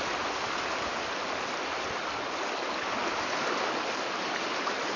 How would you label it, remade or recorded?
recorded